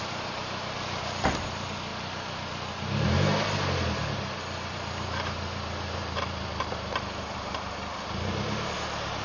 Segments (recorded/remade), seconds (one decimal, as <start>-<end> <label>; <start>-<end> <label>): 0.0-1.9 remade; 1.9-4.7 recorded; 4.7-9.2 remade